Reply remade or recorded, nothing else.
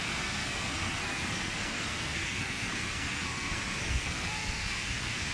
remade